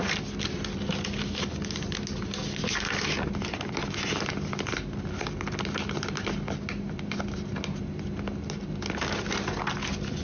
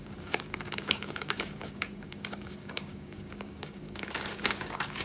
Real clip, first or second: first